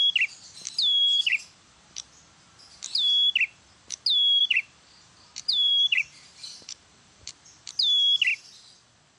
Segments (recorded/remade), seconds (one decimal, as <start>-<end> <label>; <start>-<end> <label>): 0.0-1.0 recorded; 1.0-2.1 remade; 2.1-4.4 recorded; 4.4-7.3 remade; 7.3-9.2 recorded